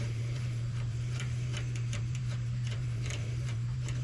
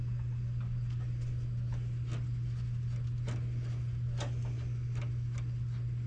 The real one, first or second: second